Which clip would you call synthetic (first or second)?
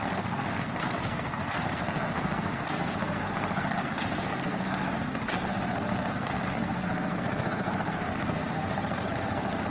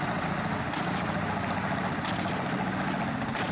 first